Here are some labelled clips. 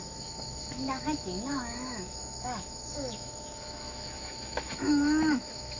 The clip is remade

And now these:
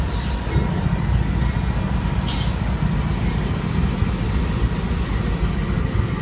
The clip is recorded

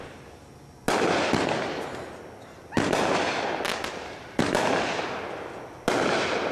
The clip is recorded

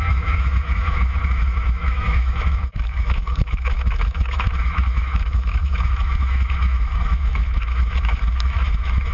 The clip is remade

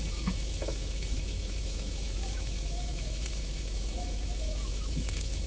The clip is remade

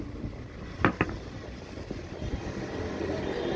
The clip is recorded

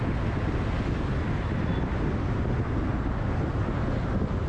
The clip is recorded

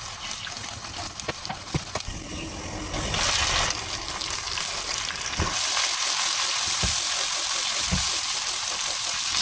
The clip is recorded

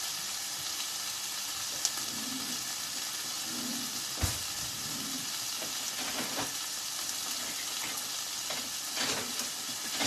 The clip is recorded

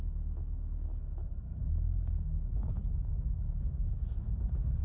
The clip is remade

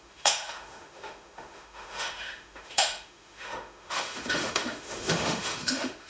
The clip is remade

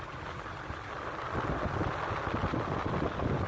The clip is recorded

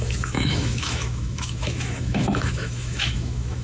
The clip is remade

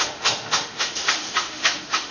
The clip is remade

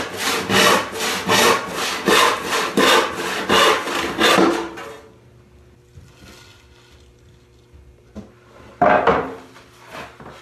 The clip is recorded